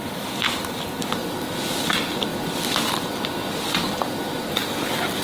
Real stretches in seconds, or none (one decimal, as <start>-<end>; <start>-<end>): 0.0-5.2

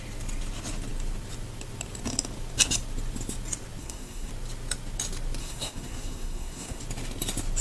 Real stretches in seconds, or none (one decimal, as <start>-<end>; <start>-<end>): 0.0-3.8; 4.3-5.4; 6.8-7.6

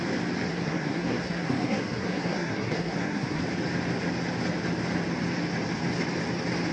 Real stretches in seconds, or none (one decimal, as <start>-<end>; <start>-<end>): 0.0-0.5; 3.4-6.7

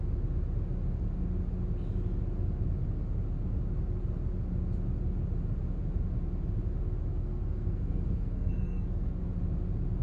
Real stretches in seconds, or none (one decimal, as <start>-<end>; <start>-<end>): 0.0-7.1; 9.2-10.0